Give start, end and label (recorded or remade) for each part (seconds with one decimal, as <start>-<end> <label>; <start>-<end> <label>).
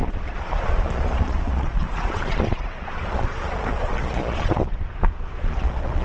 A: 0.0-6.0 remade